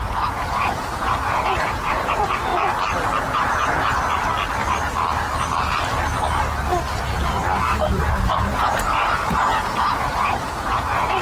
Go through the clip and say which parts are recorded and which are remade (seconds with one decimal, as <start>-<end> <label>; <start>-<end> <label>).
0.0-2.5 remade; 2.5-3.2 recorded; 3.2-3.9 remade; 3.9-8.3 recorded; 8.3-11.2 remade

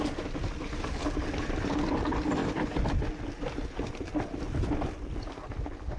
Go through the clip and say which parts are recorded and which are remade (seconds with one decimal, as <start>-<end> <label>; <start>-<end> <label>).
0.0-6.0 recorded

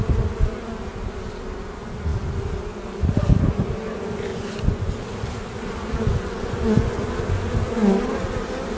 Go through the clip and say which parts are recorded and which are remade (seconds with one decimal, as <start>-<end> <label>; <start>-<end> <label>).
0.0-4.3 recorded; 4.3-4.9 remade; 4.9-6.1 recorded; 6.1-7.0 remade; 7.0-8.8 recorded

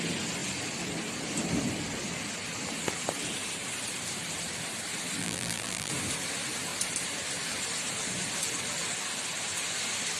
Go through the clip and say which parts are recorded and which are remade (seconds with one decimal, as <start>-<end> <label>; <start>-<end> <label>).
0.0-5.2 recorded; 5.2-5.9 remade; 5.9-10.2 recorded

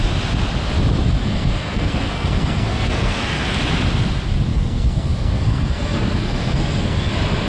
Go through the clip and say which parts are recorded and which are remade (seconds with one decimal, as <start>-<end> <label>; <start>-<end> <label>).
0.0-1.2 recorded; 1.2-3.6 remade; 3.6-4.5 recorded; 4.5-7.1 remade; 7.1-7.5 recorded

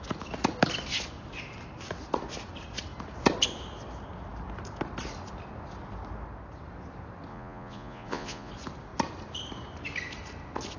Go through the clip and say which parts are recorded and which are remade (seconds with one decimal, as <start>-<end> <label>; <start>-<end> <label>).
0.0-7.3 recorded; 7.3-8.5 remade; 8.5-10.8 recorded

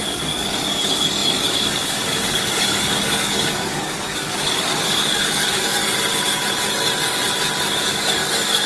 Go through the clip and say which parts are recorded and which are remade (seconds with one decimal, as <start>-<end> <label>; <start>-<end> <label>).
0.0-5.8 remade; 5.8-7.6 recorded; 7.6-8.7 remade